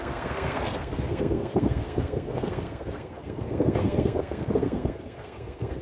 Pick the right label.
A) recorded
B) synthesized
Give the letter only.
B